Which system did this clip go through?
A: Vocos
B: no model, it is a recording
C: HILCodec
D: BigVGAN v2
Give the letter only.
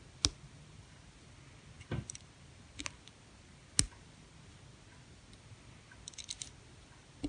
B